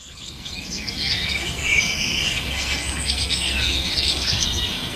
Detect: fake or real fake